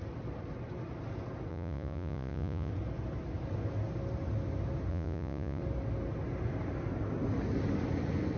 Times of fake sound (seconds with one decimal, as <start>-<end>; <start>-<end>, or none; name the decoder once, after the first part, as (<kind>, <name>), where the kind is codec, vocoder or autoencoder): 1.5-2.7 (vocoder, Vocos); 4.9-5.6